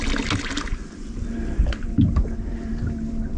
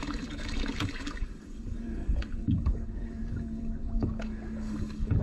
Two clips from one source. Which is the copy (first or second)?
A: second